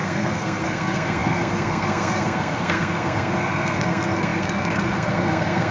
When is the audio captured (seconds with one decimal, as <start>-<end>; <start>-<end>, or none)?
none